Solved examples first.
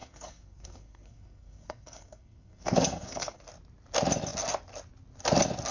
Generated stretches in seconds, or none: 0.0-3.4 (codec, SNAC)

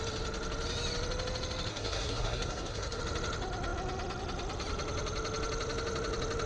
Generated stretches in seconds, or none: 1.7-3.0 (codec, SNAC)

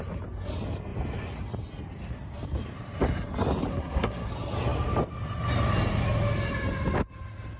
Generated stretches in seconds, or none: 3.7-4.3 (codec, SNAC)

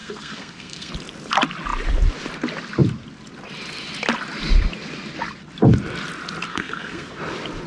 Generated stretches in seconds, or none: 0.0-0.9 (codec, SNAC); 6.5-7.1

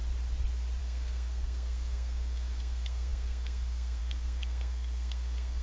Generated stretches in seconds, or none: 0.8-5.6 (codec, SNAC)

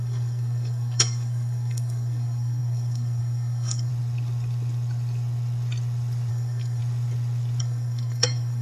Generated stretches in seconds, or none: 0.0-3.9 (codec, SNAC); 6.3-6.8; 7.6-8.6

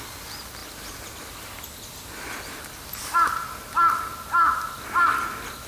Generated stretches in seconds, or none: none